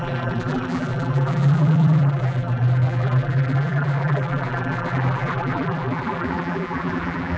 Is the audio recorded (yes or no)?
no